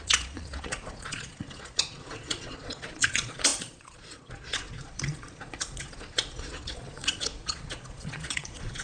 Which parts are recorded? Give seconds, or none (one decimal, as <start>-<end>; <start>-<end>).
none